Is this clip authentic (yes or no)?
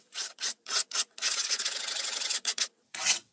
no